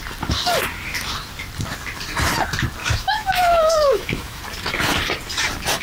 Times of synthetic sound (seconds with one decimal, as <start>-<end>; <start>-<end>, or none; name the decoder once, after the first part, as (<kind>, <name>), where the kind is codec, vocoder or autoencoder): 2.8-4.4 (autoencoder, DAC-VAE)